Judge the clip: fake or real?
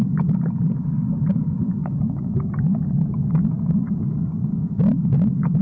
fake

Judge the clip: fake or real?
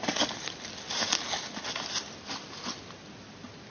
real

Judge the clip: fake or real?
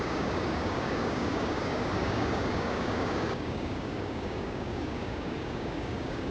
fake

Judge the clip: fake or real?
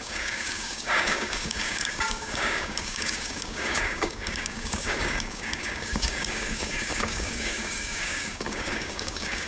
fake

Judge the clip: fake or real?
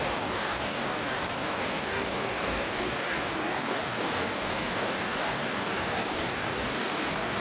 fake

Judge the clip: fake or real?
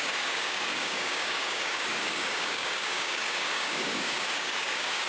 fake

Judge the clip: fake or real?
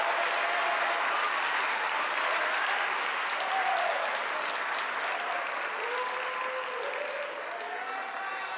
real